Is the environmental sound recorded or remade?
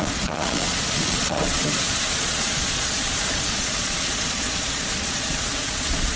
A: remade